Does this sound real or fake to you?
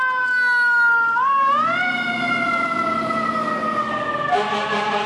real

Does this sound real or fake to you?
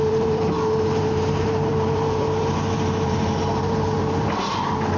fake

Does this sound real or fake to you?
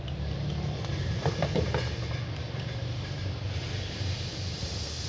real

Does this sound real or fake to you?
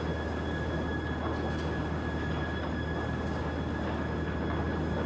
real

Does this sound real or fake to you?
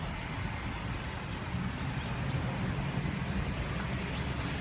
real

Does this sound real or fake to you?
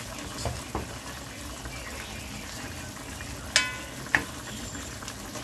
real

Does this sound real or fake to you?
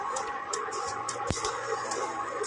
fake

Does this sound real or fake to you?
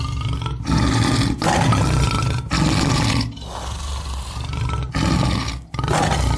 real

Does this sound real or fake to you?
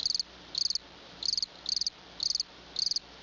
real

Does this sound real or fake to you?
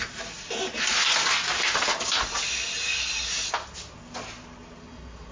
real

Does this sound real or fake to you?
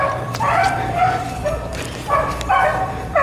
fake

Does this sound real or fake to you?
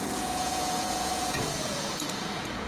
fake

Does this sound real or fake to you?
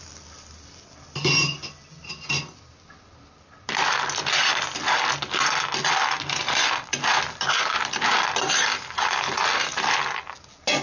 real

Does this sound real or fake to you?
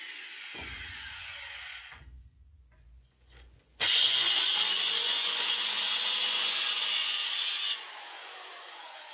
fake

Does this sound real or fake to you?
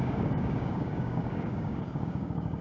fake